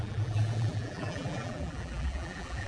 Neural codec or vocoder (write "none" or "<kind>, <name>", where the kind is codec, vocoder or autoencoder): vocoder, BigVGAN v2